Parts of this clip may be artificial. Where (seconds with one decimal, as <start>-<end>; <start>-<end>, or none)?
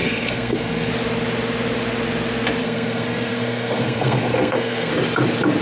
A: 0.0-0.9; 2.6-4.9